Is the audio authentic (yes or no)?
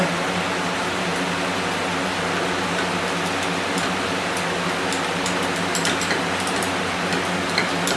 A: yes